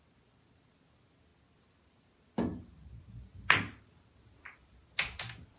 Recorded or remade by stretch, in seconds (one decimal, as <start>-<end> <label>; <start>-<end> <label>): 0.0-5.6 recorded